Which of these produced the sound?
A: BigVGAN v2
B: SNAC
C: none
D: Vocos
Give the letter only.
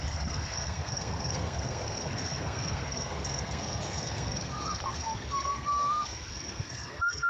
B